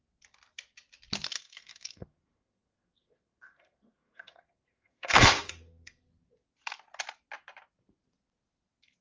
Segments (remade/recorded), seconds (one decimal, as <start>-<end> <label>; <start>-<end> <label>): 0.0-1.3 recorded; 1.3-6.1 remade; 6.1-9.0 recorded

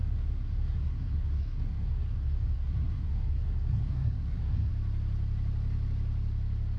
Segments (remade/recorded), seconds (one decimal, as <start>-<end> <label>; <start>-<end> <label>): 0.0-4.7 remade; 4.7-6.8 recorded

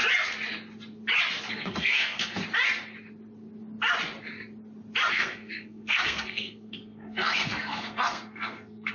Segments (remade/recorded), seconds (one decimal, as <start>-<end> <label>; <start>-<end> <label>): 0.0-1.5 recorded; 1.5-2.4 remade; 2.4-5.1 recorded; 5.1-8.9 remade

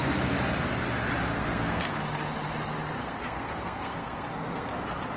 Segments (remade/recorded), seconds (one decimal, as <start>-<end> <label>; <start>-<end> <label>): 0.0-1.3 recorded; 1.3-2.0 remade; 2.0-3.0 recorded; 3.0-4.7 remade; 4.7-5.2 recorded

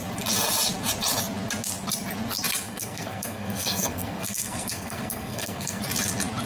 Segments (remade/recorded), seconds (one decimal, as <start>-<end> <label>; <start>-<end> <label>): 0.0-2.7 recorded; 2.7-5.8 remade; 5.8-6.5 recorded

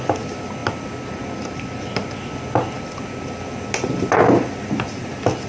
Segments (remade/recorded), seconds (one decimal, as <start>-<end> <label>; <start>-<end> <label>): 0.0-5.5 recorded